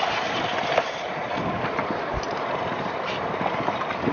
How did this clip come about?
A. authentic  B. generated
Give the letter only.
B